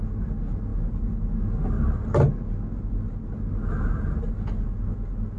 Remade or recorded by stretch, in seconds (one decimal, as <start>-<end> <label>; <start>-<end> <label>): 0.0-5.4 recorded